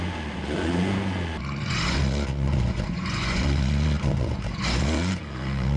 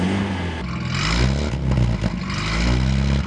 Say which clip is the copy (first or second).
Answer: first